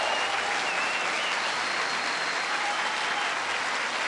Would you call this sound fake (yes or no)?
no